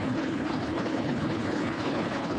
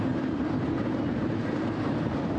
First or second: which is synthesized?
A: first